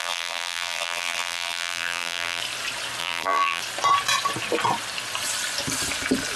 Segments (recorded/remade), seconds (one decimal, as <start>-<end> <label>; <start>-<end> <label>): 0.0-2.4 remade; 2.4-3.0 recorded; 3.0-3.6 remade; 3.6-6.4 recorded